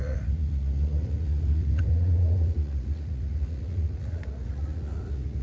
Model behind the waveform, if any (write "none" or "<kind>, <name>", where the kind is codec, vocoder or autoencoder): vocoder, Vocos